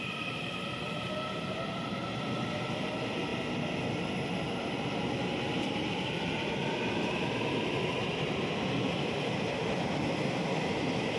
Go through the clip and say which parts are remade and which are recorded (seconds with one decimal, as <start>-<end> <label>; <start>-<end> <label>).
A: 0.0-3.3 remade; 3.3-5.6 recorded; 5.6-11.2 remade